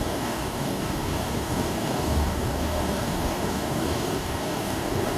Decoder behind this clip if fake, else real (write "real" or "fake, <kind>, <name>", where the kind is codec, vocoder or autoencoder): fake, codec, DAC